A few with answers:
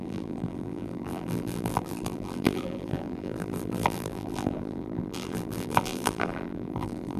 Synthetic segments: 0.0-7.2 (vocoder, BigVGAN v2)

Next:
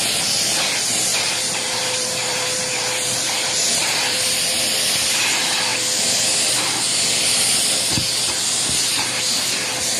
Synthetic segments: 1.1-4.5 (vocoder, BigVGAN v2)

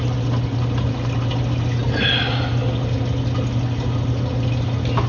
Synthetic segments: none

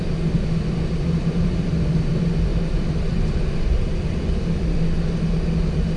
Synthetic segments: 1.2-1.7 (vocoder, BigVGAN v2); 2.5-3.3

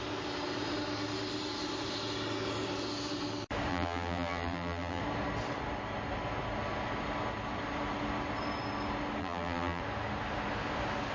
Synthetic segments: 3.7-5.0 (vocoder, BigVGAN v2); 9.2-9.8